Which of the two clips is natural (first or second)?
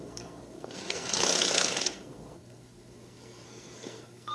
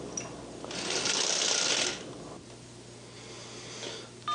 second